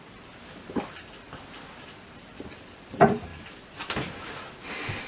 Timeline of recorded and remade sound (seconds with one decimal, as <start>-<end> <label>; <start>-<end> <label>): 0.0-5.1 recorded